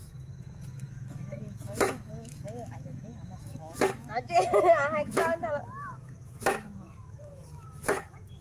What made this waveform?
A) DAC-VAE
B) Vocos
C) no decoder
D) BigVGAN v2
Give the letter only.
A